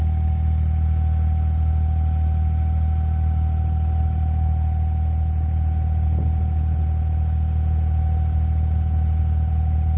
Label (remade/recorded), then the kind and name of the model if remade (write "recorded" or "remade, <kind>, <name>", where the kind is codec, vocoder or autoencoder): recorded